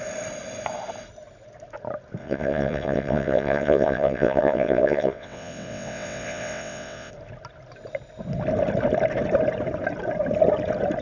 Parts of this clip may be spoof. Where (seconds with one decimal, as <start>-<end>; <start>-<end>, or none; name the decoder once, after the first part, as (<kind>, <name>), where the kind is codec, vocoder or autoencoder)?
2.2-7.1 (vocoder, WaveNeXt)